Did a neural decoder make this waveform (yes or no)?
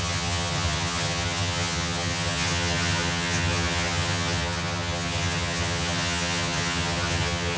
yes